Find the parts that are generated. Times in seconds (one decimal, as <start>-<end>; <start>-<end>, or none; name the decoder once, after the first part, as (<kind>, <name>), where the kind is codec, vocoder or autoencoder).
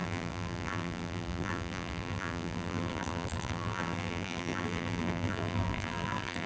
0.0-6.5 (vocoder, BigVGAN v2)